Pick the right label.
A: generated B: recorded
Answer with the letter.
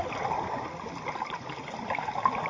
B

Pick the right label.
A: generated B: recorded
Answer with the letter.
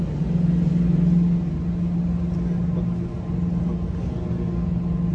B